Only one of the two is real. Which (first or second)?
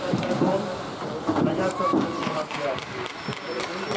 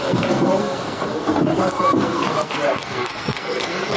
first